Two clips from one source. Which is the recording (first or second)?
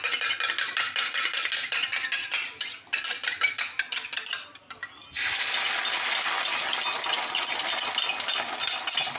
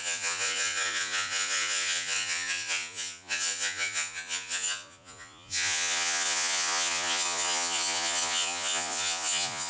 first